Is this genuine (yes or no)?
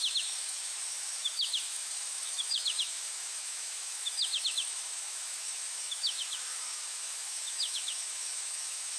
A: no